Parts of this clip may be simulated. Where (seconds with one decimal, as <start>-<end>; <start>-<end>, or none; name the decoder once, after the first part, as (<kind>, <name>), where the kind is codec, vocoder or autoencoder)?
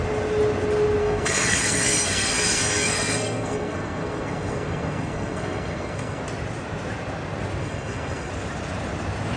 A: 1.0-6.2 (codec, SNAC); 7.6-8.3